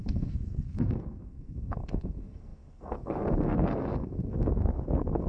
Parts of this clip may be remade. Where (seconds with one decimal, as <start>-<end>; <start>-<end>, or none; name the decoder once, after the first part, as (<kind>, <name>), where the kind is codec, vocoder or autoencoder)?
0.0-5.3 (codec, SNAC)